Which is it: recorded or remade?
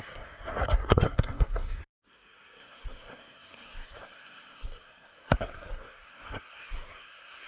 remade